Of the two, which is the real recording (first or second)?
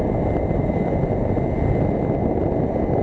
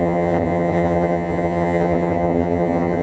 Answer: first